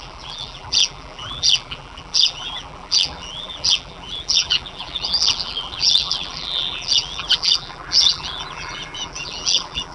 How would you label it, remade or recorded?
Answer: remade